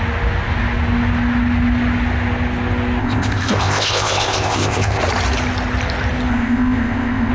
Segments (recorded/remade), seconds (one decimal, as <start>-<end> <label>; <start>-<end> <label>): 0.0-3.0 recorded; 3.0-5.0 remade; 5.0-6.3 recorded; 6.3-7.3 remade